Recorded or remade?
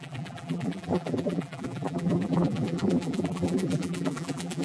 remade